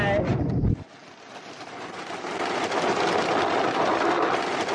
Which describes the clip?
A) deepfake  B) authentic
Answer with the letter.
B